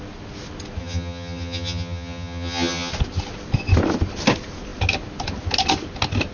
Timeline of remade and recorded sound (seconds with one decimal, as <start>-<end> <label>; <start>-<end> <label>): 0.0-0.8 recorded; 0.8-2.9 remade; 2.9-6.3 recorded